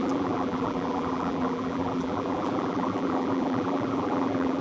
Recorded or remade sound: remade